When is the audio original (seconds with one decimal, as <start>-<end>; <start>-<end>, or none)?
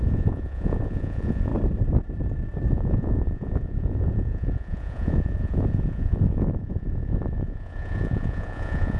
1.5-2.7